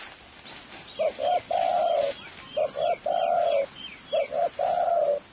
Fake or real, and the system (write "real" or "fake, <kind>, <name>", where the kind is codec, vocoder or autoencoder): real